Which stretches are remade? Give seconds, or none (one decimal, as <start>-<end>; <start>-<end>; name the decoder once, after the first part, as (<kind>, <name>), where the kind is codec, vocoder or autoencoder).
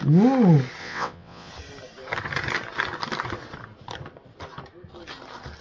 0.8-1.5 (vocoder, WaveNeXt)